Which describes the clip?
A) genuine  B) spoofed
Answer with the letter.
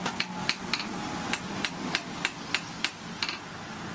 A